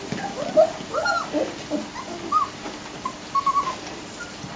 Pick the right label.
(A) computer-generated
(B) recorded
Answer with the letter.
B